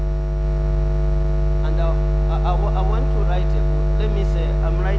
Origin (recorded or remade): recorded